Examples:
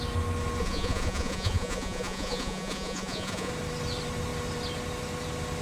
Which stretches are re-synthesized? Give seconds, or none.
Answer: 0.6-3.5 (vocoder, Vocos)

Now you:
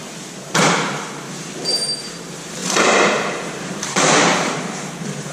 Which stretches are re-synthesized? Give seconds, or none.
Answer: 2.1-5.3 (vocoder, BigVGAN v2)

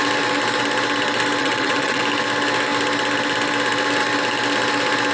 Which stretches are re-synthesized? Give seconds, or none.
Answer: 1.4-2.0 (vocoder, WaveNeXt)

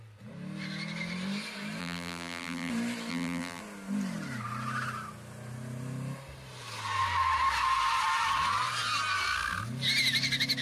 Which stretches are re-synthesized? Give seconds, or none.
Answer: 1.8-2.7 (vocoder, BigVGAN v2); 3.1-3.6

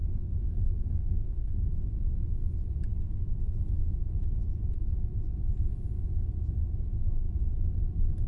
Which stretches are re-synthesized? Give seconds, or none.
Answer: 0.4-1.7 (codec, SNAC)

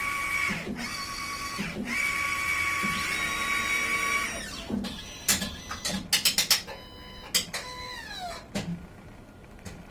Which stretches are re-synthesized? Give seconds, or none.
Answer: 8.7-9.9 (autoencoder, DAC-VAE)

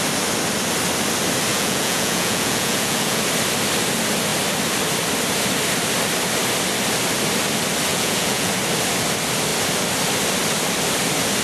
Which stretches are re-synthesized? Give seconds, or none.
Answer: 1.5-3.2 (vocoder, Vocos); 7.9-8.5